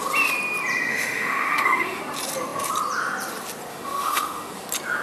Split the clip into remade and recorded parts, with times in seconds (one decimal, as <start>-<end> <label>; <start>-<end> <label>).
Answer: 0.0-0.9 recorded; 0.9-2.0 remade; 2.0-3.7 recorded; 3.7-4.5 remade; 4.5-5.0 recorded